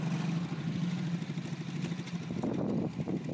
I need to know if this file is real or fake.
real